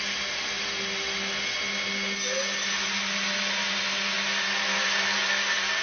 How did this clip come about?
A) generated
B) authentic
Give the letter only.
B